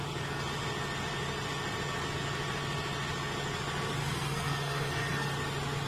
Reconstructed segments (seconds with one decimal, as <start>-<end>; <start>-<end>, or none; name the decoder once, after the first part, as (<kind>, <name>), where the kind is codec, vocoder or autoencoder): 4.0-5.3 (codec, SNAC)